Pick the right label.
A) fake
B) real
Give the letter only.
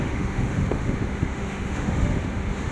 A